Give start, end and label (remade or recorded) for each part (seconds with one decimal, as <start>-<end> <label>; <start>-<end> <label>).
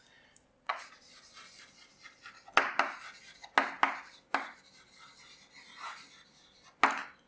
0.0-0.4 recorded; 0.4-1.2 remade; 1.2-7.3 recorded